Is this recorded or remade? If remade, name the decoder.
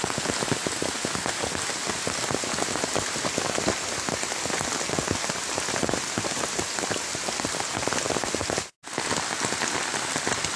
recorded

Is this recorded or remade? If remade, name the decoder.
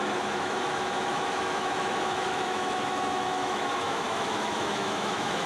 remade, autoencoder, DAC-VAE